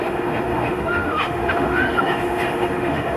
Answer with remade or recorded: remade